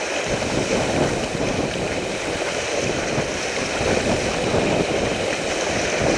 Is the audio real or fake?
real